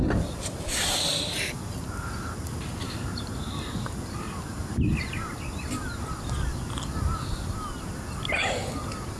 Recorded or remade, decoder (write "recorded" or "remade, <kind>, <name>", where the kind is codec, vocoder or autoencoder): recorded